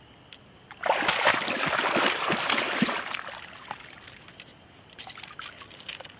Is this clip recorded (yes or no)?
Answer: yes